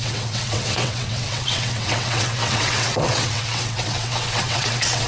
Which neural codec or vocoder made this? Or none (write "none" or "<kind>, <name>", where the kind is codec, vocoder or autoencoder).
vocoder, WaveNeXt